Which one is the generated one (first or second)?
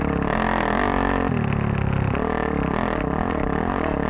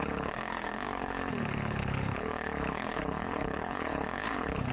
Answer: second